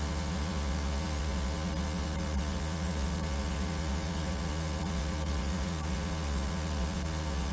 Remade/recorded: remade